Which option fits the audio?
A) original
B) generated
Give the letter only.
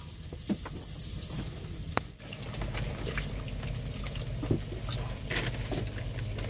A